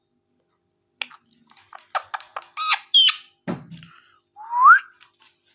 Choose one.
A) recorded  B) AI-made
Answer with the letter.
A